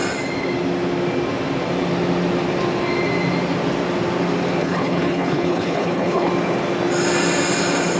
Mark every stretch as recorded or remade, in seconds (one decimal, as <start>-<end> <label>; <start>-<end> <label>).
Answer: 0.0-4.6 recorded; 4.6-6.3 remade; 6.3-8.0 recorded